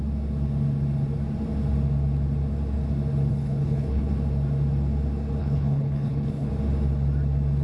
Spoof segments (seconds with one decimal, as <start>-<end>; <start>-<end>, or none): 3.3-4.1; 5.4-6.5